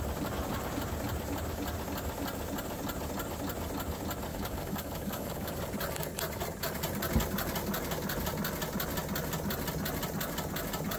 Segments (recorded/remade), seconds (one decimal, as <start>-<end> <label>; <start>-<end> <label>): 0.0-4.3 recorded; 4.3-5.5 remade; 5.5-11.0 recorded